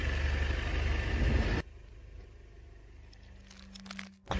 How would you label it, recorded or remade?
recorded